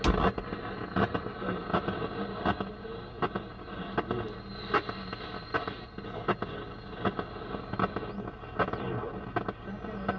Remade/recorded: recorded